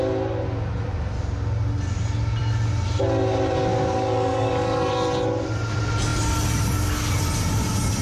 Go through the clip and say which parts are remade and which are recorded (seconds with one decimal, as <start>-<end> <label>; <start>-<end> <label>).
0.0-3.7 recorded; 3.7-4.9 remade; 4.9-8.0 recorded